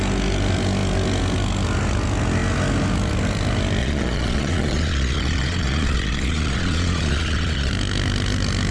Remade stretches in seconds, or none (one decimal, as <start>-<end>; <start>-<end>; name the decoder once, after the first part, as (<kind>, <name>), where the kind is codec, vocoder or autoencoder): 3.8-7.7 (vocoder, Vocos)